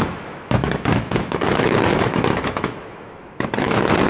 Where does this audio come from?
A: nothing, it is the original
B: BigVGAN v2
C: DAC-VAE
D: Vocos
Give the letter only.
C